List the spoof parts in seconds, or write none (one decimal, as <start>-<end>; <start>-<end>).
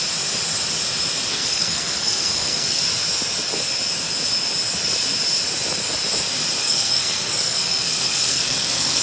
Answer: 1.3-2.8; 6.6-9.0